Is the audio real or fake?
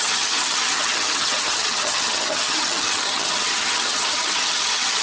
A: fake